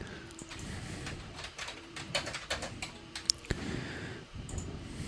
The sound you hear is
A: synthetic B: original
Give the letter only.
A